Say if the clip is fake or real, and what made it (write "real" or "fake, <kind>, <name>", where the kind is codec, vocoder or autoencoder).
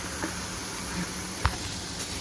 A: real